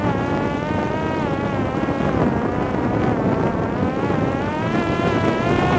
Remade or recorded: remade